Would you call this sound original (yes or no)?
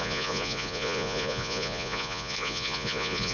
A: no